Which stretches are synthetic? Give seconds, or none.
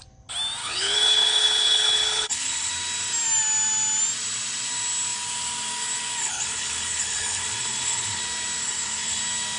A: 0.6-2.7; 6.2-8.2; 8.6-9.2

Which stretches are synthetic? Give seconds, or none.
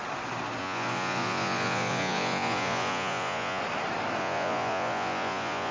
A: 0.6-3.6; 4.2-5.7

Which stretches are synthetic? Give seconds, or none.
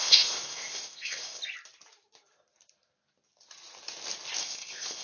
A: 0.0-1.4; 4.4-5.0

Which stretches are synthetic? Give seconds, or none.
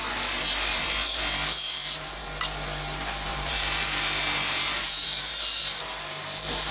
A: 0.7-2.2; 3.3-5.8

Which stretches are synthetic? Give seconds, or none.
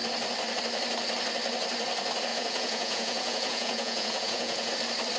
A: 2.3-4.7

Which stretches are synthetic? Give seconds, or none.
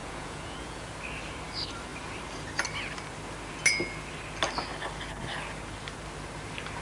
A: 0.0-0.9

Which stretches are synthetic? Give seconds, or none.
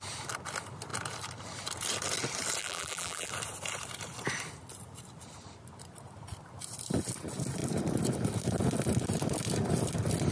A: 2.6-3.3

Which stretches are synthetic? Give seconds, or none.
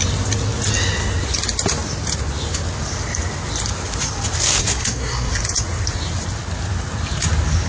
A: 4.6-5.3